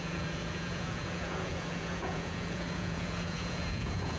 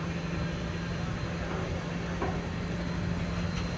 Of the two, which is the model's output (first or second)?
first